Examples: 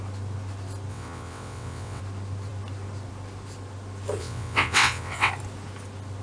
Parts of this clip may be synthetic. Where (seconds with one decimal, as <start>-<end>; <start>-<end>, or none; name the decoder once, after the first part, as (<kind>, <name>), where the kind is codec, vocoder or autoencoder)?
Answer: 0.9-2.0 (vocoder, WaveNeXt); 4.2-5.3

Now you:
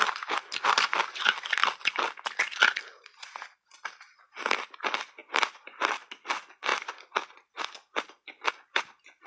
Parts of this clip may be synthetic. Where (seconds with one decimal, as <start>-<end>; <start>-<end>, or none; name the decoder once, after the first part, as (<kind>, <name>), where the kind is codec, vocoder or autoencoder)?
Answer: 5.2-6.1 (vocoder, BigVGAN v2); 6.7-8.5

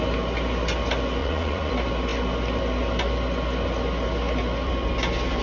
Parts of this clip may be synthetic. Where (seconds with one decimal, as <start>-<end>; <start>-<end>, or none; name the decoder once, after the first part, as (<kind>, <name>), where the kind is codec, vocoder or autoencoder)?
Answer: 1.2-1.7 (vocoder, Vocos)

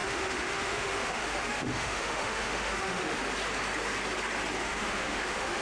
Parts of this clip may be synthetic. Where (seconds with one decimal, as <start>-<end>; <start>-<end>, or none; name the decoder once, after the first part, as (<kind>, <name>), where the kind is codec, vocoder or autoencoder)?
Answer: 0.0-3.2 (autoencoder, DAC-VAE); 4.6-5.6

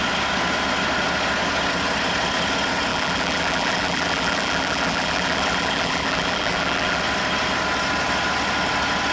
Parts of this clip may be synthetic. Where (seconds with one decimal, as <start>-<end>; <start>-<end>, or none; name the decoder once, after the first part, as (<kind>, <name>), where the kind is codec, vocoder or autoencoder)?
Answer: 2.9-7.0 (vocoder, BigVGAN v2)

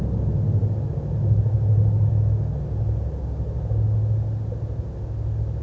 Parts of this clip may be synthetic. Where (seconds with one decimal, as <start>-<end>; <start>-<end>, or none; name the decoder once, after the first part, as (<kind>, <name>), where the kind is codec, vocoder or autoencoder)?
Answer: none

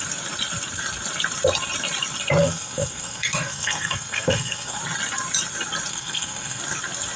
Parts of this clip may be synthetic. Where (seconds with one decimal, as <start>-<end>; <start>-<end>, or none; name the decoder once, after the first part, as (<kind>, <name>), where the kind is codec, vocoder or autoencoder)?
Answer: 2.4-4.8 (codec, SNAC); 5.9-6.6